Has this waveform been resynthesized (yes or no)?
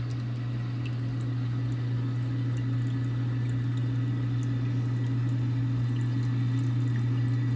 no